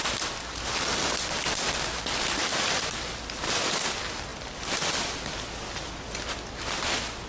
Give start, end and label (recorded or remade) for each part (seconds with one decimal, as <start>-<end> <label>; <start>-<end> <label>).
0.0-7.3 recorded